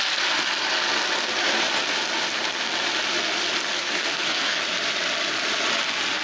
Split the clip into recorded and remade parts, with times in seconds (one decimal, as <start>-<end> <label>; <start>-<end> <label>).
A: 0.0-3.7 recorded; 3.7-4.6 remade; 4.6-6.2 recorded